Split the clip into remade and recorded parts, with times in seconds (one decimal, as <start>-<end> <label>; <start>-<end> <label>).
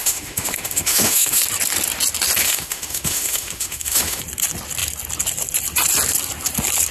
0.0-1.4 remade; 1.4-2.4 recorded; 2.4-4.2 remade; 4.2-6.9 recorded